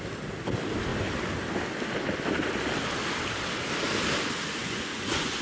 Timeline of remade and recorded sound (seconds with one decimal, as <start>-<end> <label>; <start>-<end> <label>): 0.0-4.6 recorded; 4.6-5.4 remade

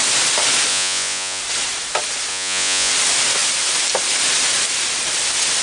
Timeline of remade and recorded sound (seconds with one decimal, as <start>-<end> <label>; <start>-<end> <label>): 0.0-0.7 recorded; 0.7-1.4 remade; 1.4-2.3 recorded; 2.3-2.9 remade; 2.9-5.6 recorded

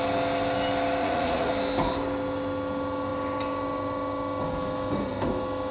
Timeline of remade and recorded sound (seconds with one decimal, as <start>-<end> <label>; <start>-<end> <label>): 0.0-1.0 recorded; 1.0-1.5 remade; 1.5-5.7 recorded

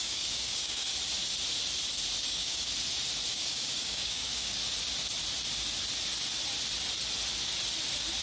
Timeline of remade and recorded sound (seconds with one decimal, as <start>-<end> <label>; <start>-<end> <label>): 0.0-0.9 remade; 0.9-2.2 recorded; 2.2-2.7 remade; 2.7-3.3 recorded; 3.3-4.6 remade; 4.6-8.2 recorded